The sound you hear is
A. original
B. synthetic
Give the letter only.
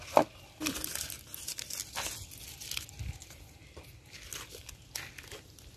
A